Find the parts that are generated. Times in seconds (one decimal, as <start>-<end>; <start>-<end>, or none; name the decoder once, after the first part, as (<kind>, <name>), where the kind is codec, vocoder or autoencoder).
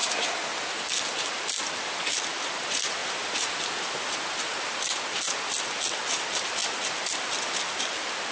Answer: none